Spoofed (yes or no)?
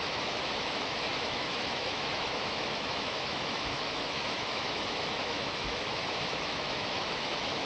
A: yes